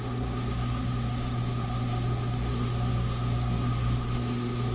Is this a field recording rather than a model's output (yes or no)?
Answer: no